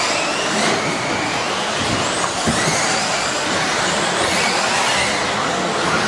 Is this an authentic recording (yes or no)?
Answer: yes